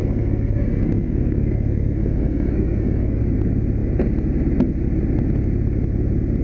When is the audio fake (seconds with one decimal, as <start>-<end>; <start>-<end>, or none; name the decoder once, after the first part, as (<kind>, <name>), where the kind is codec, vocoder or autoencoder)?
0.0-3.2 (codec, SNAC)